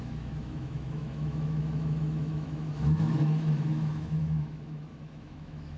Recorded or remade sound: remade